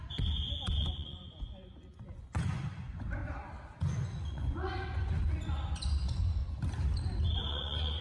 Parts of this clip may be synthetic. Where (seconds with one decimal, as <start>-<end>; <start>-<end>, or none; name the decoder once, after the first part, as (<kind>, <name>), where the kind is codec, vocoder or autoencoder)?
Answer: 0.0-3.2 (vocoder, Vocos); 3.8-6.4; 7.3-8.0